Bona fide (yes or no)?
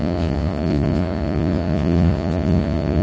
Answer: no